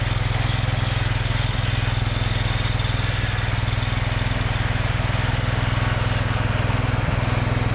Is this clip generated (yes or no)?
no